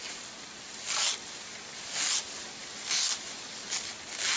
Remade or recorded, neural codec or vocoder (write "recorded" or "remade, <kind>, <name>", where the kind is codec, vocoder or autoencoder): recorded